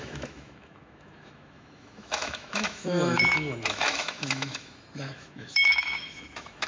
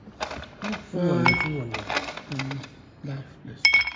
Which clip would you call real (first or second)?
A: second